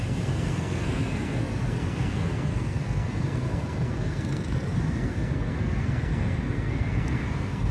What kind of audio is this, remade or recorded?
remade